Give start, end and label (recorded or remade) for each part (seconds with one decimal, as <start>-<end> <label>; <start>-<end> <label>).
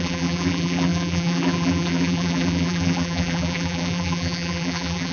0.0-5.1 remade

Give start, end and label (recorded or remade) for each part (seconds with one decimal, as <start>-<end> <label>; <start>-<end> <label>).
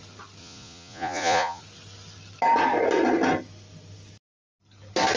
0.0-0.4 recorded; 0.4-1.6 remade; 1.6-5.2 recorded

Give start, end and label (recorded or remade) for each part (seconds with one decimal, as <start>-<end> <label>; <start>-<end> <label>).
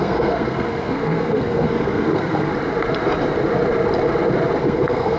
0.0-2.5 remade; 2.5-4.6 recorded; 4.6-5.2 remade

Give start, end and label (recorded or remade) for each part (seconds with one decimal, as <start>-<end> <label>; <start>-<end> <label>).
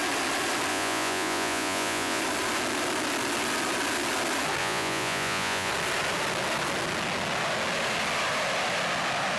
0.0-0.7 recorded; 0.7-2.2 remade; 2.2-4.6 recorded; 4.6-5.7 remade; 5.7-9.4 recorded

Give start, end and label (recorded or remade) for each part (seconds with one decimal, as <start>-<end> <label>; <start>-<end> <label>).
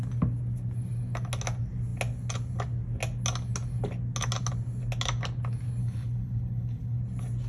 0.0-5.8 recorded; 5.8-7.0 remade; 7.0-7.5 recorded